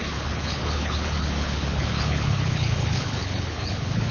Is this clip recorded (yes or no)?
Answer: no